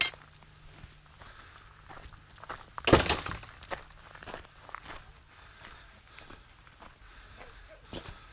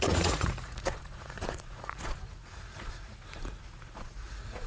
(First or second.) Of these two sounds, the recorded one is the first